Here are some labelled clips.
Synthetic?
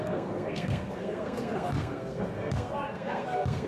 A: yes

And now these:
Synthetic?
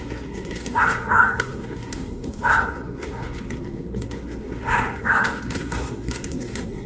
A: yes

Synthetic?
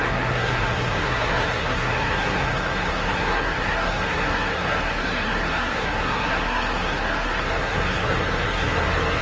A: yes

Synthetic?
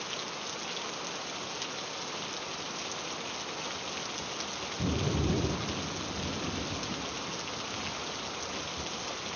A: no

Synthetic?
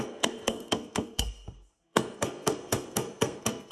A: yes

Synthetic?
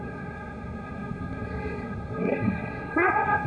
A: yes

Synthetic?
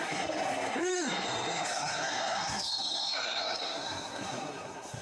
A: yes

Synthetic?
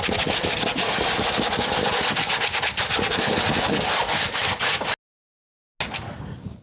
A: no